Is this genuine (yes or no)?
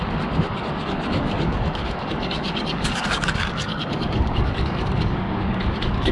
no